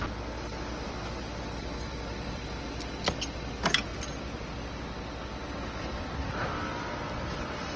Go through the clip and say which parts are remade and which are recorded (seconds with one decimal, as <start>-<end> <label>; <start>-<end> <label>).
0.0-1.9 recorded; 1.9-2.6 remade; 2.6-3.9 recorded; 3.9-4.5 remade; 4.5-7.8 recorded